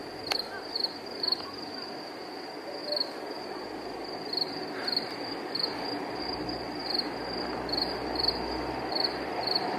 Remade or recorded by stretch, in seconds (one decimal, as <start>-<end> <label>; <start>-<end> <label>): 0.0-0.7 recorded; 0.7-2.8 remade; 2.8-6.0 recorded; 6.0-6.8 remade; 6.8-7.4 recorded; 7.4-9.8 remade